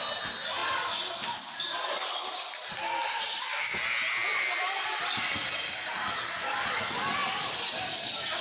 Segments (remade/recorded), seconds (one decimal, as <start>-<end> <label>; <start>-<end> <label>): 0.0-4.2 recorded; 4.2-6.8 remade; 6.8-7.2 recorded; 7.2-7.8 remade; 7.8-8.4 recorded